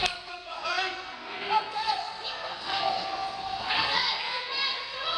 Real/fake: fake